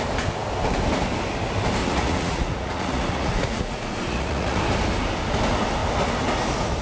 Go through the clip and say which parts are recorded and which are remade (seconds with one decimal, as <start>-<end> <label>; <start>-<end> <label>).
0.0-1.8 recorded; 1.8-4.6 remade; 4.6-6.8 recorded